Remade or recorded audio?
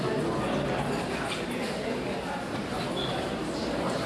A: recorded